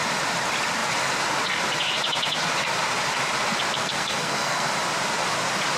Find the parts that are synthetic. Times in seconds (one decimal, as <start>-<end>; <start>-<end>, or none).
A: 3.8-4.7